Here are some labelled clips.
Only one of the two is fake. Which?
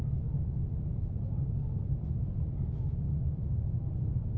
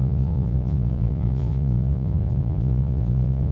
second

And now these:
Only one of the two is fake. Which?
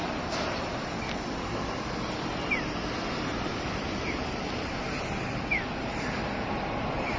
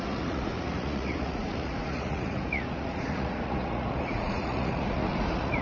second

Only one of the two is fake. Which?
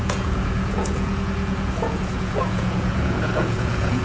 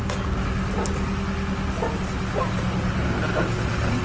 first